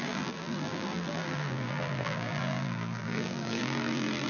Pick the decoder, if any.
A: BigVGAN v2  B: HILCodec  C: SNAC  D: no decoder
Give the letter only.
A